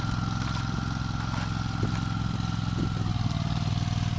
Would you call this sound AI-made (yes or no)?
no